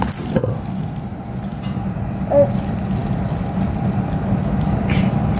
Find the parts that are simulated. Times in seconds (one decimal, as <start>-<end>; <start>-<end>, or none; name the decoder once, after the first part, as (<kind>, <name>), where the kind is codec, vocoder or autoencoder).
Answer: none